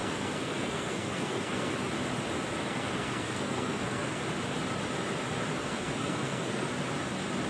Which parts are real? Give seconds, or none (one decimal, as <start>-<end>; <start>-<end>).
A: 1.9-2.6; 4.2-5.6; 6.7-7.5